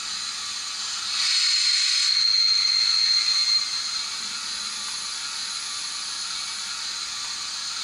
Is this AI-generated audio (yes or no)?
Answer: no